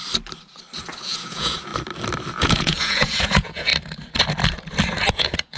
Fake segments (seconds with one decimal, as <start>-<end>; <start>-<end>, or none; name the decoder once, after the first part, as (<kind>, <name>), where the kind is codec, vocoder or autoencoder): 1.0-1.7 (vocoder, Vocos); 2.4-3.7; 5.1-5.6